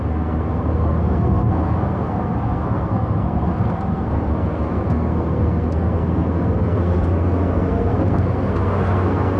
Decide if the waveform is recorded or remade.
remade